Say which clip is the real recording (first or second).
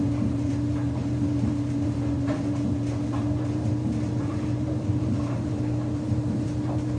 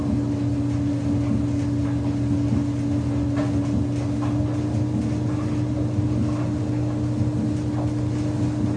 second